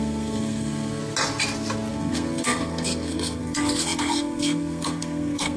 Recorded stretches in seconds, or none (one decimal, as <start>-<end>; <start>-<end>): 1.0-1.9